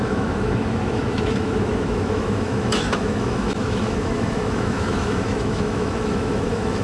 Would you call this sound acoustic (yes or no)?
no